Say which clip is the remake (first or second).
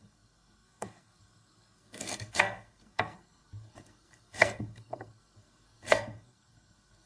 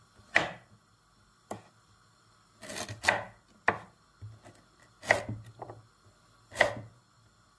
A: first